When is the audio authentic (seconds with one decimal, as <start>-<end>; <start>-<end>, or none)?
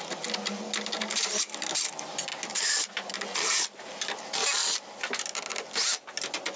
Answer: 0.0-6.6